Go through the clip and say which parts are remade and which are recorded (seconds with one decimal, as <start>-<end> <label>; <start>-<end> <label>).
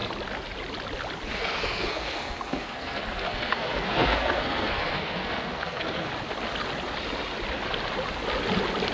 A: 0.0-1.3 recorded; 1.3-6.1 remade; 6.1-8.9 recorded